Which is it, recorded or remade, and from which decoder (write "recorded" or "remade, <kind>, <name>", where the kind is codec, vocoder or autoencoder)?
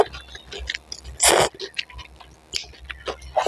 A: recorded